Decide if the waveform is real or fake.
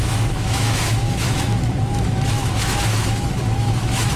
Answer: fake